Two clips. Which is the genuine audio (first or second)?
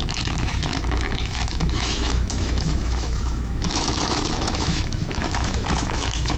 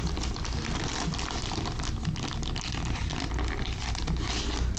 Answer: second